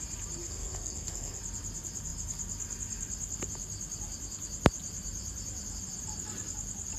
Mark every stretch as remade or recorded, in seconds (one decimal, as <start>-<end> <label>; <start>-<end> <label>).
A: 0.0-0.4 recorded; 0.4-1.4 remade; 1.4-7.0 recorded